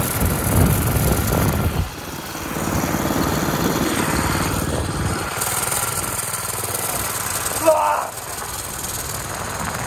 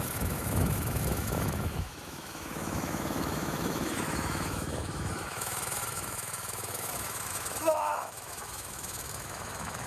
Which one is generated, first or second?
second